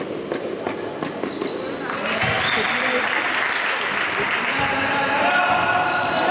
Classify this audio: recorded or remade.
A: recorded